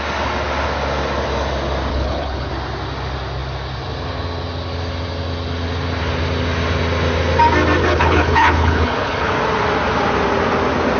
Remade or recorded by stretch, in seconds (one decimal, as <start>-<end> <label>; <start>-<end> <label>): 0.0-1.9 recorded; 1.9-2.5 remade; 2.5-7.8 recorded; 7.8-9.3 remade; 9.3-11.0 recorded